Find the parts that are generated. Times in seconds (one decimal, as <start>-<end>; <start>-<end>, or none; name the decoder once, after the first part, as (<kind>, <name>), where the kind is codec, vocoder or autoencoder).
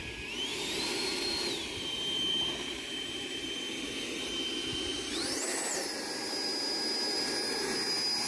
0.5-4.3 (vocoder, BigVGAN v2); 4.9-5.8